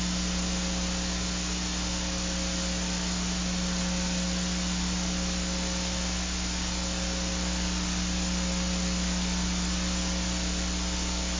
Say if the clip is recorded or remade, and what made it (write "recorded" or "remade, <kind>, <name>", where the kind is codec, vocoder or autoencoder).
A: recorded